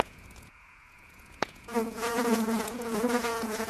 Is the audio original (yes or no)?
no